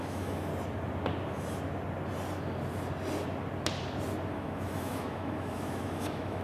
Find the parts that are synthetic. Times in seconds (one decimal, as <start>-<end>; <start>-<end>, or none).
0.0-0.5; 4.3-6.4